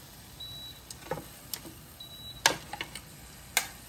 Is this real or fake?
real